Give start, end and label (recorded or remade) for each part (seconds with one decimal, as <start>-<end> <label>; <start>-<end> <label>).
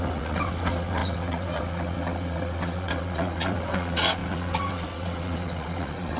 0.0-6.2 remade